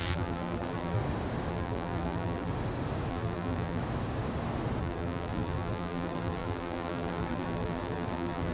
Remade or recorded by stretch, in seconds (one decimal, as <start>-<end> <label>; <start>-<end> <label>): 0.0-1.0 remade; 1.0-1.5 recorded; 1.5-2.5 remade; 2.5-3.1 recorded; 3.1-3.8 remade; 3.8-4.8 recorded; 4.8-8.5 remade